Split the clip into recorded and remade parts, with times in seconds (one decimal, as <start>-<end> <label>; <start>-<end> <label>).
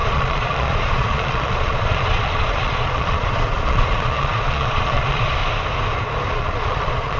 0.0-5.4 remade; 5.4-6.3 recorded; 6.3-7.2 remade